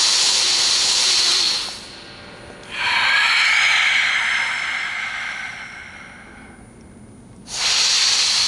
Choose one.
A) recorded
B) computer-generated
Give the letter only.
A